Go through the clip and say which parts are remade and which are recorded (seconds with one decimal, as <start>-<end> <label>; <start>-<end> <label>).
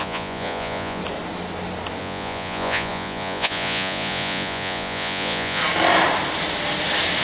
0.0-1.0 remade; 1.0-2.0 recorded; 2.0-5.6 remade; 5.6-7.2 recorded